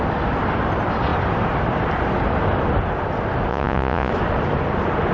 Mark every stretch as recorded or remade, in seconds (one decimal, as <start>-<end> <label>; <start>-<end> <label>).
0.0-3.5 recorded; 3.5-4.1 remade; 4.1-5.1 recorded